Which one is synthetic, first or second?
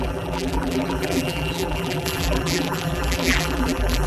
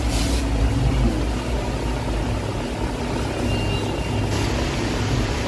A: first